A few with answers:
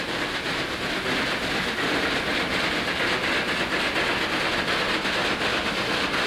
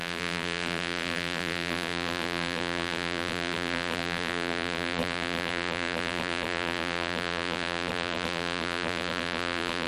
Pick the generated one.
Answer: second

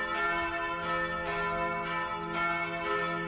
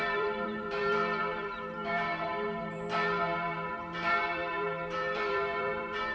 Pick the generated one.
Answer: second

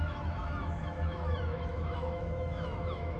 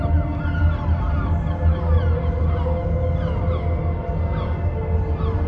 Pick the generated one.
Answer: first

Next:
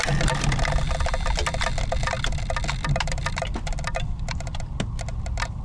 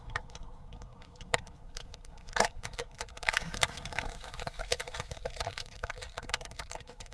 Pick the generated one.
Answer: second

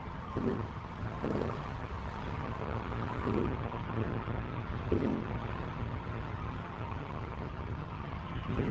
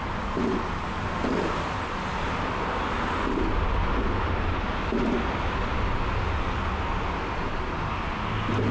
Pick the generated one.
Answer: first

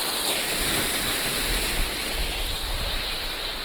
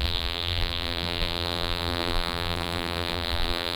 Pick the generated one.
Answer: second